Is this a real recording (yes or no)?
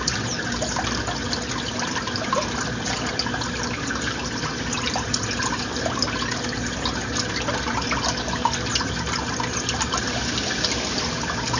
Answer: yes